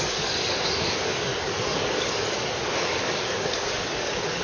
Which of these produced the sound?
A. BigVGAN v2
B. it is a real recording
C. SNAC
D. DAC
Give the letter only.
D